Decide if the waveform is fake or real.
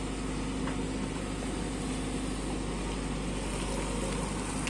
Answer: real